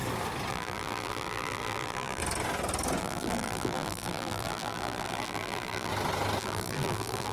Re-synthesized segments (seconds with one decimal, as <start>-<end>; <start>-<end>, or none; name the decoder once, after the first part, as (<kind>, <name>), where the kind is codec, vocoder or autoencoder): 0.5-2.2 (vocoder, BigVGAN v2); 3.0-5.9; 6.4-7.3